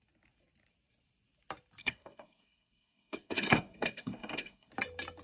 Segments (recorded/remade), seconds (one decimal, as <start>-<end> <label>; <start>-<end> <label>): 0.0-1.8 recorded; 1.8-4.7 remade; 4.7-5.2 recorded